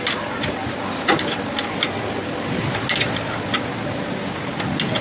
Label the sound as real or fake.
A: real